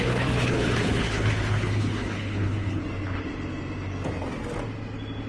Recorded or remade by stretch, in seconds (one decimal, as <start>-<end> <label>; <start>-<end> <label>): 0.0-2.8 remade; 2.8-5.3 recorded